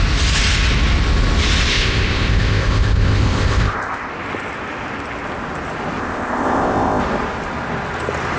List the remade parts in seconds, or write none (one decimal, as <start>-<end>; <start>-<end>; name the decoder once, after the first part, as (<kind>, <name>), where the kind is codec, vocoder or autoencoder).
1.7-4.1 (codec, ZipCodec); 6.0-7.0